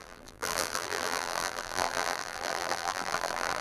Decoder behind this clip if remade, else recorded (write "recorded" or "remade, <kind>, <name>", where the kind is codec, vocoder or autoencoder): remade, vocoder, BigVGAN v2